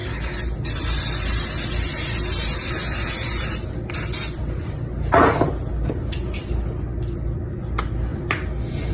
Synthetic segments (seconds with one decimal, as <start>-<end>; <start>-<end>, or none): none